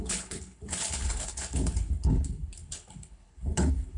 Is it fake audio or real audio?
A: fake